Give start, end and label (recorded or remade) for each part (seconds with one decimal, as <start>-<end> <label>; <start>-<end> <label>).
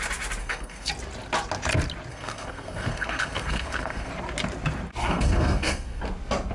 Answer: 0.0-0.4 recorded; 0.4-0.9 remade; 0.9-2.1 recorded; 2.1-4.1 remade; 4.1-5.0 recorded; 5.0-6.0 remade; 6.0-6.5 recorded